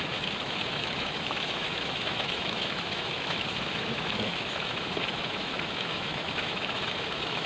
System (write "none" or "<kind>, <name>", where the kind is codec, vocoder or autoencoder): autoencoder, DAC-VAE